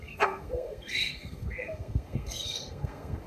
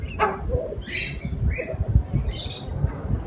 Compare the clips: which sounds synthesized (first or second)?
first